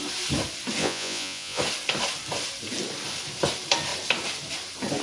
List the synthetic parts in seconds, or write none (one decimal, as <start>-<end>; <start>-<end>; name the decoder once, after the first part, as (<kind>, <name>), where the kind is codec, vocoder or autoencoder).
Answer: 0.8-1.6 (vocoder, Vocos)